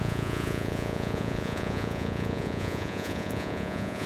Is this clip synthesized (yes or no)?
yes